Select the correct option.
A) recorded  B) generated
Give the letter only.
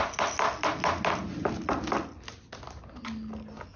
A